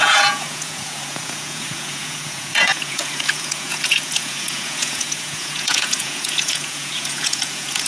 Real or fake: fake